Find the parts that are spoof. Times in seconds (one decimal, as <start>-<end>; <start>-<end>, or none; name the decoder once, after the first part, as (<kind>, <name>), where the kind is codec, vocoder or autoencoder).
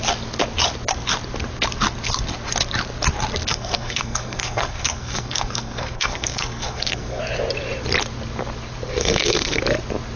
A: 3.5-7.2 (codec, SNAC); 9.0-9.6